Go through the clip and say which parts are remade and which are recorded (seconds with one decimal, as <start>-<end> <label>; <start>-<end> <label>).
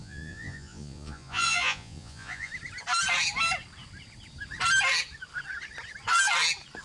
0.0-2.5 remade; 2.5-6.8 recorded